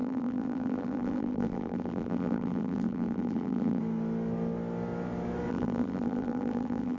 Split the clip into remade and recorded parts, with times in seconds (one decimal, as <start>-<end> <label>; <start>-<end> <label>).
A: 0.0-3.8 remade; 3.8-5.5 recorded; 5.5-7.0 remade